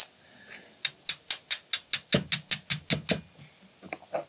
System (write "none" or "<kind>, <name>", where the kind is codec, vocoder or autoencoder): none